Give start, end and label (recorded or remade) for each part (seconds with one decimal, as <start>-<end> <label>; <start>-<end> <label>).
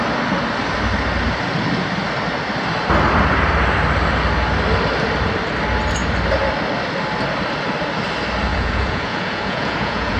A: 0.0-8.5 recorded; 8.5-10.2 remade